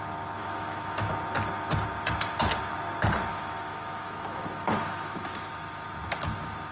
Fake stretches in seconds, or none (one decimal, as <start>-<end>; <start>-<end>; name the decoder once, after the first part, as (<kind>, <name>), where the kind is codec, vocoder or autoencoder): 0.4-1.1 (autoencoder, DAC-VAE); 3.3-5.5